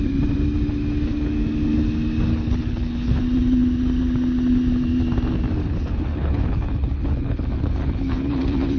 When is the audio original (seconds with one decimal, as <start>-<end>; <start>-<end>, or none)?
0.0-2.3; 3.2-5.6